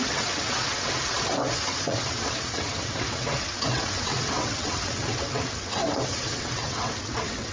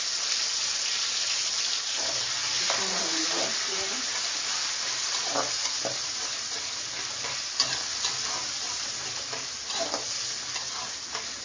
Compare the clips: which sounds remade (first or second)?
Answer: first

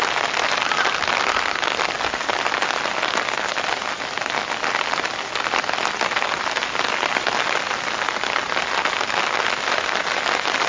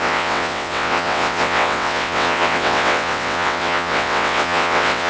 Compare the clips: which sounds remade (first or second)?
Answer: second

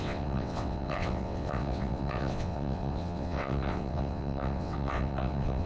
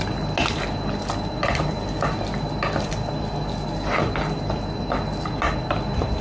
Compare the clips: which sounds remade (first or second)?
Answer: first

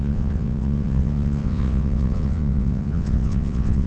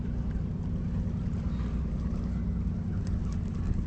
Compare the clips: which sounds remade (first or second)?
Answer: first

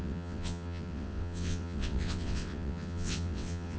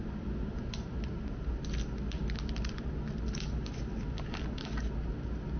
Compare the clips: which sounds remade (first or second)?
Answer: first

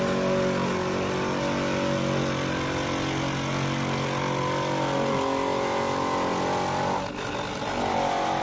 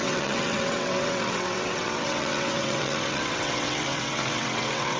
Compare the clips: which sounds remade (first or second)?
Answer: second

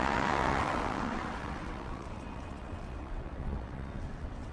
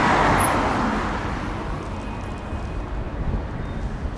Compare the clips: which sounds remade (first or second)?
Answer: first